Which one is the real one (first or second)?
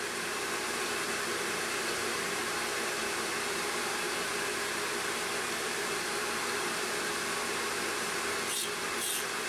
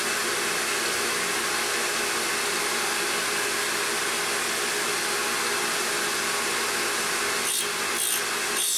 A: second